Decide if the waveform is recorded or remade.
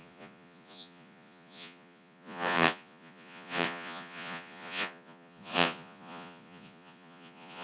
remade